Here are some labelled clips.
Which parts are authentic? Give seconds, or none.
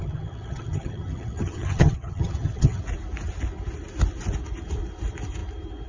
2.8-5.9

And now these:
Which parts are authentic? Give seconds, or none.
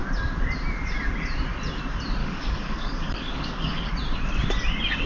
0.0-2.2; 3.9-5.1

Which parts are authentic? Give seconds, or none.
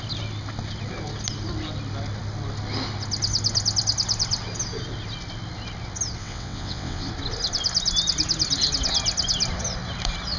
0.0-6.2; 7.1-10.4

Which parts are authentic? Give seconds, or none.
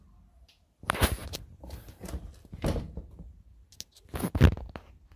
0.0-5.2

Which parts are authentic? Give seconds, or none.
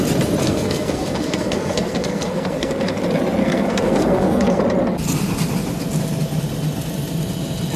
0.0-0.4; 3.0-3.4; 4.6-7.8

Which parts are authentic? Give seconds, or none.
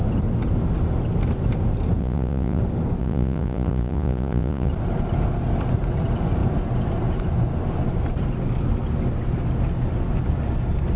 0.0-2.0; 2.6-3.0; 4.7-11.0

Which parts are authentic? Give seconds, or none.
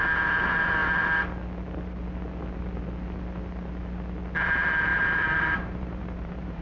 0.0-4.9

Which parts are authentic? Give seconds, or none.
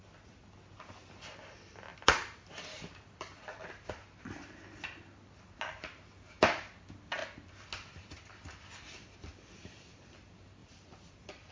0.0-1.9; 3.9-10.6